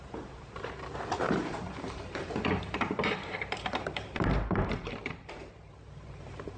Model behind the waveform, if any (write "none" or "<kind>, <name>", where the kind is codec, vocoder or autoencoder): vocoder, BigVGAN v2